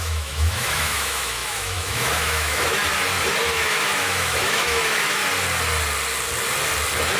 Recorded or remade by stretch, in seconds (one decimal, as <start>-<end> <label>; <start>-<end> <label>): 0.0-2.8 remade; 2.8-3.4 recorded; 3.4-5.2 remade; 5.2-7.2 recorded